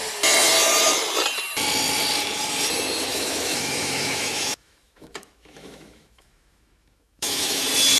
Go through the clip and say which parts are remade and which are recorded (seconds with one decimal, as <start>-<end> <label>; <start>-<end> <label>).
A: 0.0-3.1 recorded; 3.1-7.6 remade; 7.6-8.0 recorded